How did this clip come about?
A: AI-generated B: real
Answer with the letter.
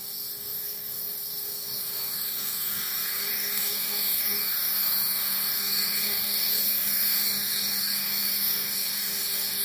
A